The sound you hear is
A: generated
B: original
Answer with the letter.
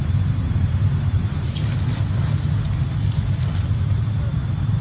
B